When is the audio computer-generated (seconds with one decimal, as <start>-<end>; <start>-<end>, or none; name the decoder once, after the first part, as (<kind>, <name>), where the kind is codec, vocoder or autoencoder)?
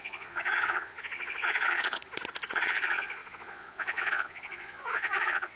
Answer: 0.0-2.0 (vocoder, Vocos); 2.5-5.6